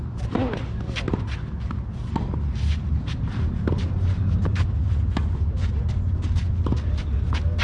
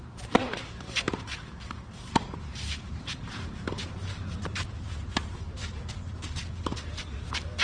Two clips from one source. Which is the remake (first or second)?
second